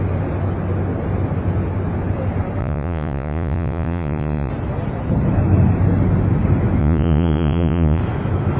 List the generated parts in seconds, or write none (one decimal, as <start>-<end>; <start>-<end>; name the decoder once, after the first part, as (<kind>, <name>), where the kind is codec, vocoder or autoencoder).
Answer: 2.6-4.5 (vocoder, Vocos); 6.8-8.0